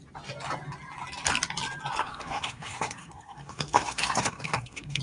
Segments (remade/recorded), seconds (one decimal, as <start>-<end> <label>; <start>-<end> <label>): 0.0-2.0 recorded; 2.0-5.0 remade